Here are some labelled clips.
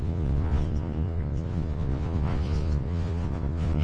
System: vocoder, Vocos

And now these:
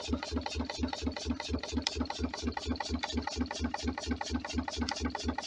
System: none